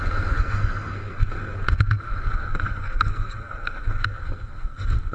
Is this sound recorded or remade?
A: remade